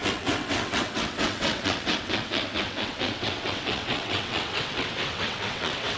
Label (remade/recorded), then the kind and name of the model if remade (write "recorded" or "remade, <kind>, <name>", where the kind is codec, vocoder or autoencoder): remade, vocoder, WaveNeXt